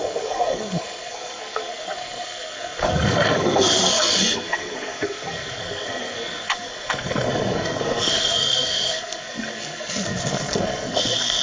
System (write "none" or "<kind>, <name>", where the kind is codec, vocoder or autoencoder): codec, SNAC